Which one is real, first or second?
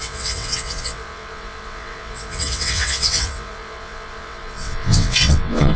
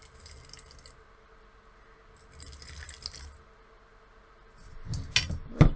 second